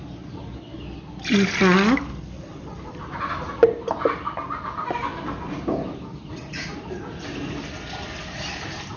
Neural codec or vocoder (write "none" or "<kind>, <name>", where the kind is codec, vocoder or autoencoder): none